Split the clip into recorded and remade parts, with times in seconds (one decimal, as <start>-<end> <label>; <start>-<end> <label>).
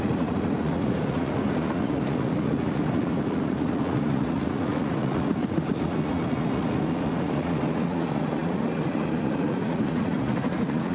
0.0-10.9 remade